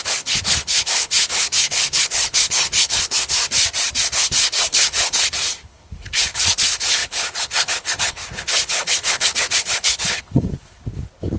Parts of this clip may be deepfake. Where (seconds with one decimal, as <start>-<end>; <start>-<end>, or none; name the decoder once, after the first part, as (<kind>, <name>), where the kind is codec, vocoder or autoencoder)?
0.0-3.4 (codec, HILCodec); 4.0-11.4